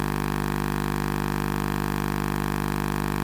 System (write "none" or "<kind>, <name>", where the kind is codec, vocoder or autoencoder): none